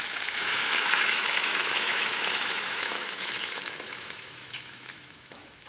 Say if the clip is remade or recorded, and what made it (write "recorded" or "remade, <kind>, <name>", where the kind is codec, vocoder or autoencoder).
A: remade, autoencoder, DAC-VAE